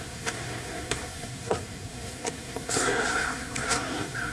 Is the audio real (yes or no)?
no